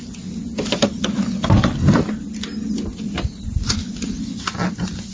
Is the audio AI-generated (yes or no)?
no